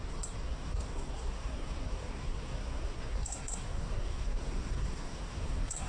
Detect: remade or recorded remade